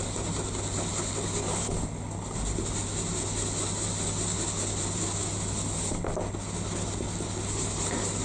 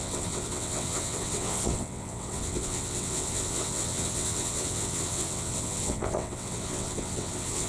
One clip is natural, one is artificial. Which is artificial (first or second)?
second